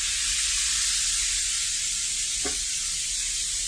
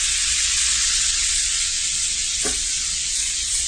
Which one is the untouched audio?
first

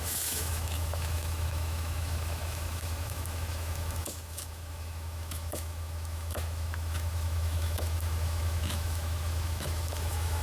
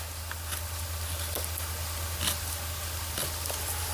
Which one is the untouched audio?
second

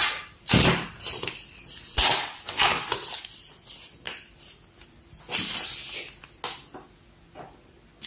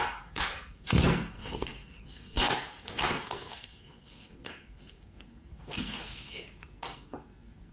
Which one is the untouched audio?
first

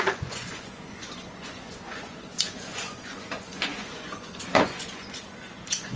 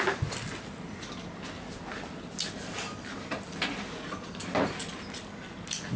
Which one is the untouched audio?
second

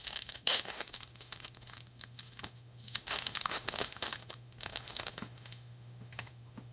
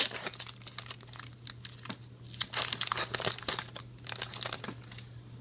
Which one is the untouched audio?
second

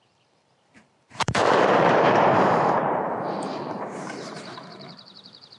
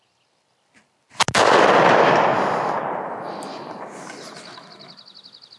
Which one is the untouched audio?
second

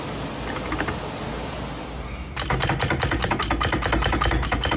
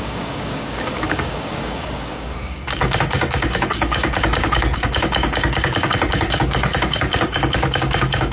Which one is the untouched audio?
first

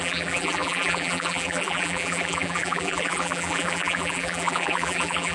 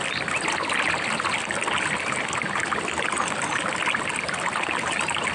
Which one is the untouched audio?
second